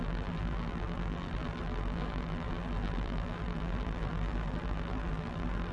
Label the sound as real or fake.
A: fake